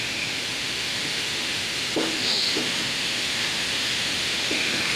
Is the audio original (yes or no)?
no